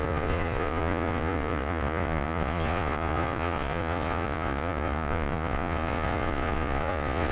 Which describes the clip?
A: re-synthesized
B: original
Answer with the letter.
A